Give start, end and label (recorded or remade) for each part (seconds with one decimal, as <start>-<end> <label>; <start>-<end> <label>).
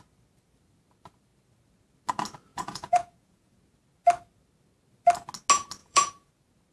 0.0-2.5 recorded; 2.5-3.6 remade; 3.6-5.8 recorded; 5.8-6.3 remade; 6.3-6.7 recorded